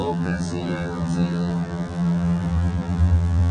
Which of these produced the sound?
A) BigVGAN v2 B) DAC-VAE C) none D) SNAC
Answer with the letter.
A